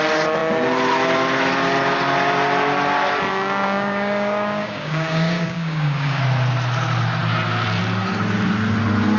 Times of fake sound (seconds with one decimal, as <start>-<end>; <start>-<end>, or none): 3.3-6.2